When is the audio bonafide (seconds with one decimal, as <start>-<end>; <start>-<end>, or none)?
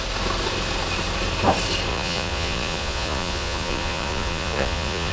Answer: 0.0-1.9